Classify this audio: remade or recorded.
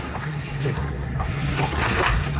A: remade